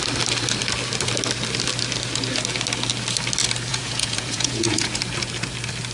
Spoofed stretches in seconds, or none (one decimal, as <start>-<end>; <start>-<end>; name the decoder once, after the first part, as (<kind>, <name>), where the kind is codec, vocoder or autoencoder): 3.7-5.0 (vocoder, Vocos)